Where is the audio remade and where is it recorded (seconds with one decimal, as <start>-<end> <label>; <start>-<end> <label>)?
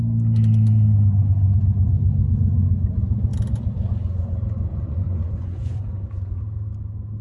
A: 0.0-4.7 recorded; 4.7-6.4 remade; 6.4-7.2 recorded